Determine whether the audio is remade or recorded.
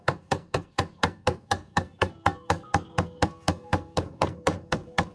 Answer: remade